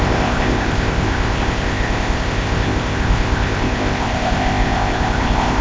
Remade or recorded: remade